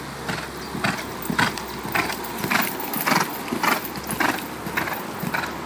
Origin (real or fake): real